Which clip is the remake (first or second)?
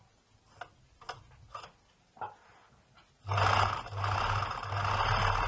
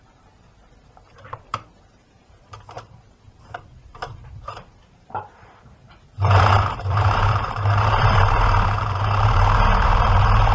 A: second